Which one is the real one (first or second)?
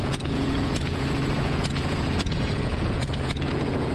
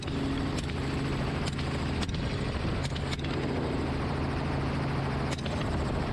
second